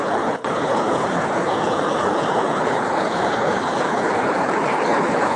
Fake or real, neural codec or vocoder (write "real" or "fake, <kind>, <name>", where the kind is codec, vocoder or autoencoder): fake, codec, HILCodec